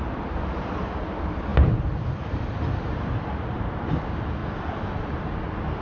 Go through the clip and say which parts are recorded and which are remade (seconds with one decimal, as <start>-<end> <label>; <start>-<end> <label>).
0.0-1.5 remade; 1.5-4.0 recorded; 4.0-4.4 remade; 4.4-5.0 recorded; 5.0-5.8 remade